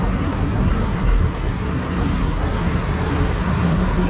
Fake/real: fake